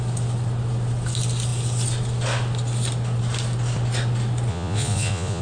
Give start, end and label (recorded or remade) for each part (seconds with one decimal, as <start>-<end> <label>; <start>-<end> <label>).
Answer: 0.0-4.5 recorded; 4.5-5.4 remade